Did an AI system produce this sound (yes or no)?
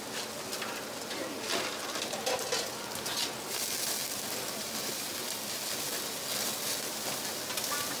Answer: no